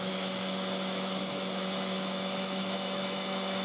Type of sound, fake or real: fake